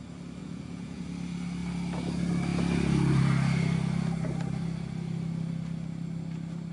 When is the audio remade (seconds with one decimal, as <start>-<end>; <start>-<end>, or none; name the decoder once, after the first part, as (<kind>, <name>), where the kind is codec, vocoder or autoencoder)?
0.4-1.0 (vocoder, Vocos)

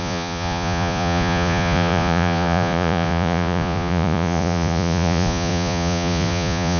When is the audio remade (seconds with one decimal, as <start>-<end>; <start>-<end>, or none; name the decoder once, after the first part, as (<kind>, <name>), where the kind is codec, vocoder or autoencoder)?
0.0-6.8 (vocoder, Vocos)

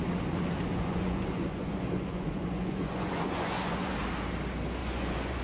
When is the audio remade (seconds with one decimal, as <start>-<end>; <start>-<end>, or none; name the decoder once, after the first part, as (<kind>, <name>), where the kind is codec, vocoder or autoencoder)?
0.7-3.9 (vocoder, Vocos); 4.8-5.4

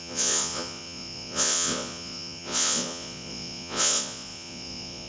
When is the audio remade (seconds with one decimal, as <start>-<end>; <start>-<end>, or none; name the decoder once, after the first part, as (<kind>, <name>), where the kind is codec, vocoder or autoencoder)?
0.0-5.1 (vocoder, Vocos)

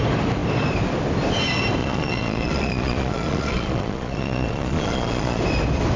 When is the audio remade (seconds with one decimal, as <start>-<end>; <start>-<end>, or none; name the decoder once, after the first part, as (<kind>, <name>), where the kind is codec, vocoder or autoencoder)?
1.8-5.4 (vocoder, Vocos)